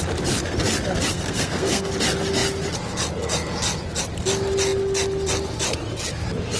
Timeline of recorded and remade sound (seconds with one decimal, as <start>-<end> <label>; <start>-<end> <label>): 0.0-1.1 recorded; 1.1-1.9 remade; 1.9-6.6 recorded